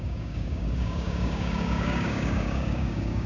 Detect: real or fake fake